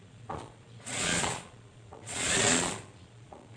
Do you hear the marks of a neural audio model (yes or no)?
yes